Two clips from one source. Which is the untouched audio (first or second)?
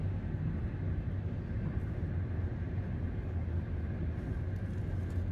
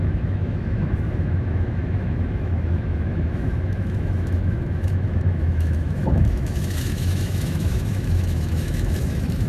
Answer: first